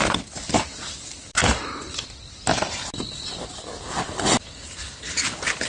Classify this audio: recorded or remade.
recorded